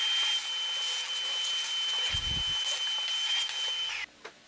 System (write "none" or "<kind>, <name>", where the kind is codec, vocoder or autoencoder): none